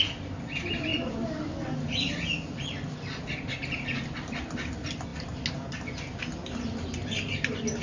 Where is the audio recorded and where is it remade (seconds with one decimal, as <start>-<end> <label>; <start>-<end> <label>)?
0.0-7.8 recorded